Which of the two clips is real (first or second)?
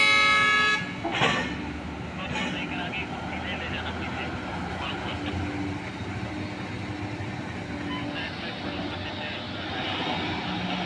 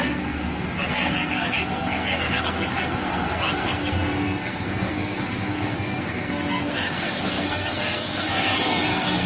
first